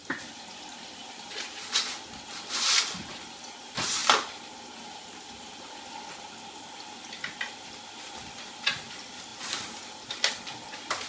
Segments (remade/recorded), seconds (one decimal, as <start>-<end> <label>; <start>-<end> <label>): 0.0-11.1 recorded